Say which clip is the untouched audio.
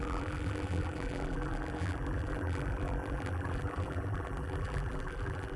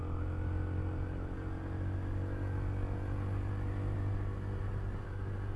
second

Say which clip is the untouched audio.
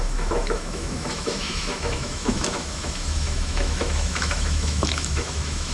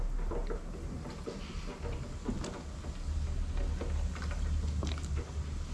second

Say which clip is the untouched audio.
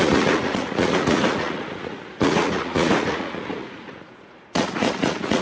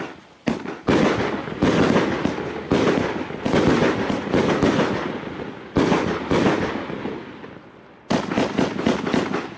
second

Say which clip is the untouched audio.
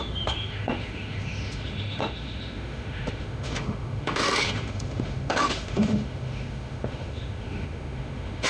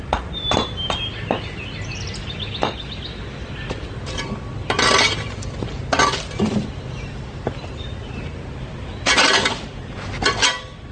second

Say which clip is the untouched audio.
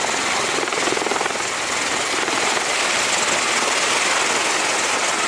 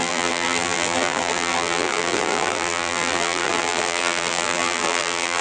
first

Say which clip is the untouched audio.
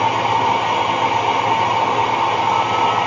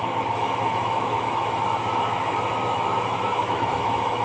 first